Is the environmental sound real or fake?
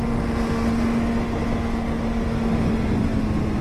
real